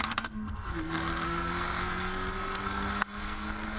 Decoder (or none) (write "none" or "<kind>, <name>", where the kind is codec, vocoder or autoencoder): codec, SNAC